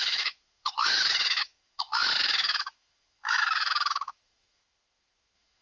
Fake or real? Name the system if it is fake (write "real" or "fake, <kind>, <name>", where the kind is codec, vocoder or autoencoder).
fake, autoencoder, DAC-VAE